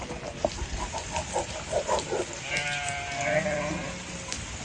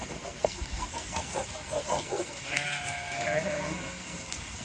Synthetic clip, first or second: second